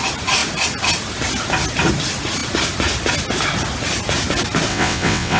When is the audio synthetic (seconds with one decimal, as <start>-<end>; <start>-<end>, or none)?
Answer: 4.7-5.4